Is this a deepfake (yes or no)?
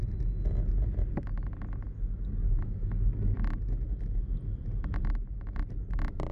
no